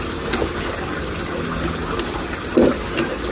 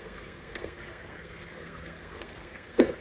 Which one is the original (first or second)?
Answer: first